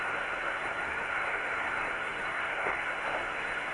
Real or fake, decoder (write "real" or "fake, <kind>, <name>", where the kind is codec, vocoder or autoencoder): fake, codec, SNAC